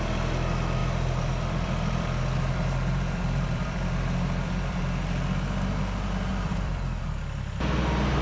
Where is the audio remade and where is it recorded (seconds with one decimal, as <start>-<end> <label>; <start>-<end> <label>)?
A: 0.0-0.8 recorded; 0.8-4.8 remade; 4.8-6.3 recorded; 6.3-7.0 remade; 7.0-8.2 recorded